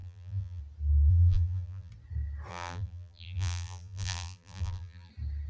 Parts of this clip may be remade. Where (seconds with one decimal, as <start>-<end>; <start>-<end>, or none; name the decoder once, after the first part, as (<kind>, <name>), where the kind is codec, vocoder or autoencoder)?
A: 0.0-0.6 (vocoder, BigVGAN v2); 1.1-1.9; 2.5-5.1